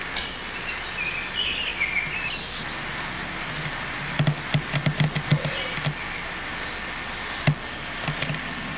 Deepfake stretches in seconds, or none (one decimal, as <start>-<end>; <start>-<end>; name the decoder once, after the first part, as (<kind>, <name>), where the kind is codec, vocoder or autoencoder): none